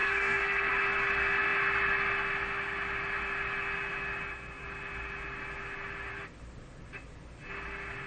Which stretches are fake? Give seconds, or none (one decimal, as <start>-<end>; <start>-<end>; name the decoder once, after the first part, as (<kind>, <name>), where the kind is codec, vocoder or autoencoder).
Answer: 0.0-0.7 (codec, SNAC)

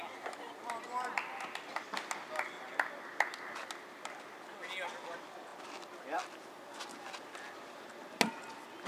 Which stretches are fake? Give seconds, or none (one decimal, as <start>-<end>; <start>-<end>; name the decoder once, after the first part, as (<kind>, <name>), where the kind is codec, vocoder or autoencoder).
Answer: none